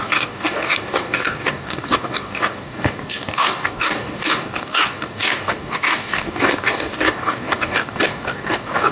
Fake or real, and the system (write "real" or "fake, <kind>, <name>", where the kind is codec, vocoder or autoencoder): fake, codec, DAC